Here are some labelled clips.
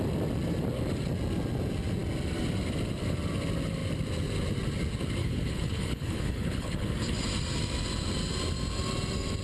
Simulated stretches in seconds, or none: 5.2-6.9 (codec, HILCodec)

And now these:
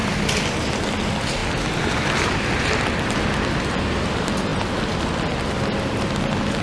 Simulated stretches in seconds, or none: none

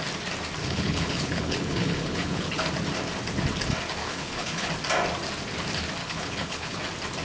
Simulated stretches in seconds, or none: 0.6-2.6 (codec, HILCodec); 4.0-4.7; 6.0-6.8

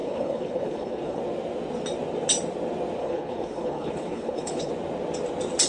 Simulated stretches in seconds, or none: 0.0-1.2 (codec, HILCodec); 3.0-4.7

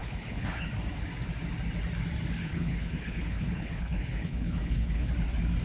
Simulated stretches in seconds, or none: 0.0-0.7 (codec, HILCodec); 2.4-5.1

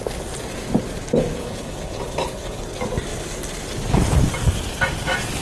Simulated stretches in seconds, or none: 1.4-2.6 (codec, HILCodec)

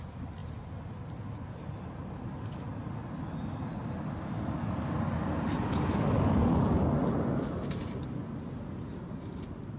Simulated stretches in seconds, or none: none